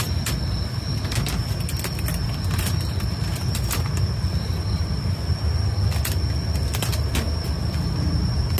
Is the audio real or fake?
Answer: real